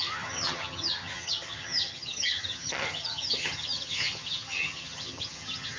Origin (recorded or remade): remade